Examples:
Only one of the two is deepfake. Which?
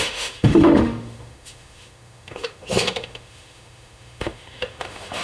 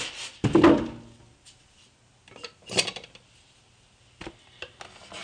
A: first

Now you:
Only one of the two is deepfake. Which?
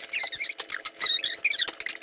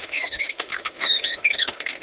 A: second